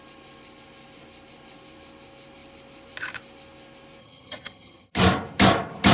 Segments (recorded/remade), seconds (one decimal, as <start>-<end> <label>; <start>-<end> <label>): 0.0-4.0 recorded; 4.0-4.9 remade; 4.9-5.9 recorded